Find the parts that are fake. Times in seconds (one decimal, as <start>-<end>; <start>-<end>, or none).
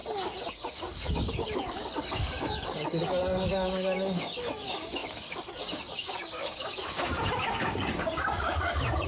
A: 0.0-9.1